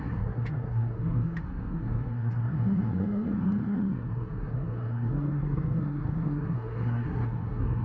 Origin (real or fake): fake